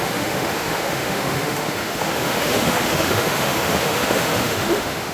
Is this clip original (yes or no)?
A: no